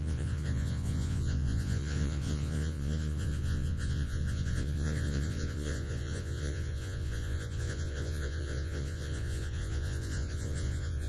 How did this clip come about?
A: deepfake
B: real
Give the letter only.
A